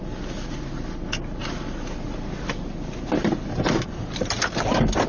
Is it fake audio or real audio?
real